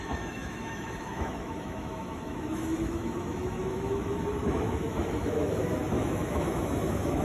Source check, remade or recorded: remade